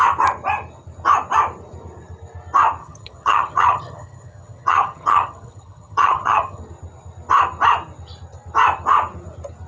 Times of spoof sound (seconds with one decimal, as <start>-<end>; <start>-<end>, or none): 2.8-6.6

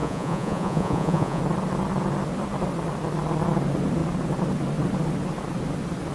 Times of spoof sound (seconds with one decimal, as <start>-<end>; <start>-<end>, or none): 0.0-1.4